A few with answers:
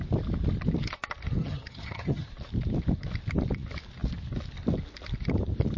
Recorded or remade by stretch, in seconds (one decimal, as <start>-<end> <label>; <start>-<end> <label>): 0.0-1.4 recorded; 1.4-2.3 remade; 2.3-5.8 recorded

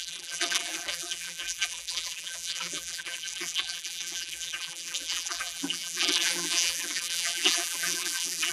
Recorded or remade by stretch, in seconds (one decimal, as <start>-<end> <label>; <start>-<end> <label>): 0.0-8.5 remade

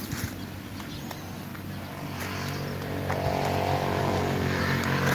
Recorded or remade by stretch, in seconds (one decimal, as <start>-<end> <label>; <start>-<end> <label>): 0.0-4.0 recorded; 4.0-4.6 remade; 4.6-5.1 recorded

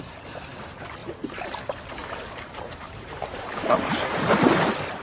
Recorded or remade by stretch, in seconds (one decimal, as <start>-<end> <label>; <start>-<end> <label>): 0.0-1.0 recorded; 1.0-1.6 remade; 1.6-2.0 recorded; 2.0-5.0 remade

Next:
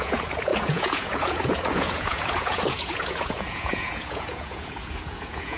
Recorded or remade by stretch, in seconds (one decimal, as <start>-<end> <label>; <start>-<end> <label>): 0.0-5.6 remade

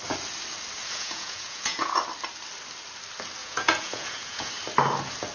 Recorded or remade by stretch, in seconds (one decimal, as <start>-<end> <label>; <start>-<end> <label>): 0.0-0.8 recorded; 0.8-2.0 remade; 2.0-3.4 recorded; 3.4-4.5 remade; 4.5-5.3 recorded

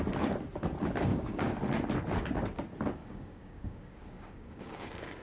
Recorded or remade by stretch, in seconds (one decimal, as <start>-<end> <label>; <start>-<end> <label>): 0.0-1.1 recorded; 1.1-1.6 remade; 1.6-3.0 recorded; 3.0-5.2 remade